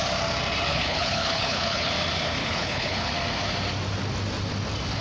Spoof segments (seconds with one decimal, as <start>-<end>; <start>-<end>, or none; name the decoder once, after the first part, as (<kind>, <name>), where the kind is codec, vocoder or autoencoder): 0.7-1.9 (codec, HILCodec); 2.4-3.1